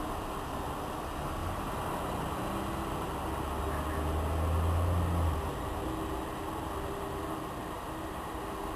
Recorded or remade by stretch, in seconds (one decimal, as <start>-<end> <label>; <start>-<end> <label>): 0.0-1.4 recorded; 1.4-2.3 remade; 2.3-7.6 recorded; 7.6-8.4 remade; 8.4-8.8 recorded